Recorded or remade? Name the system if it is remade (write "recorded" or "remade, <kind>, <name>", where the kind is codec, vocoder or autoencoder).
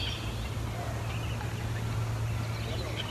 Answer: recorded